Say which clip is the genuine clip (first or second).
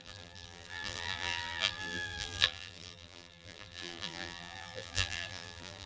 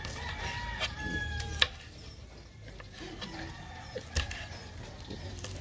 second